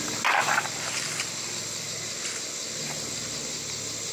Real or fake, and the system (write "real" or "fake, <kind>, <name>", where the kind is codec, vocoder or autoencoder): real